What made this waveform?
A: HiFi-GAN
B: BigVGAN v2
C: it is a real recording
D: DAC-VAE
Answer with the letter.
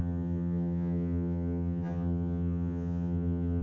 A